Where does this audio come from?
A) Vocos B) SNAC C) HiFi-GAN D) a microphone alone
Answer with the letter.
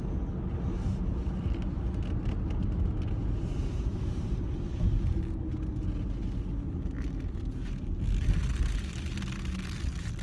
D